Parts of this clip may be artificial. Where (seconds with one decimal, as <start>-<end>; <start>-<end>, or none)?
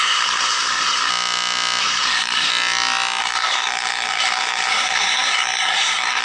0.0-1.1; 1.8-2.5; 3.2-6.2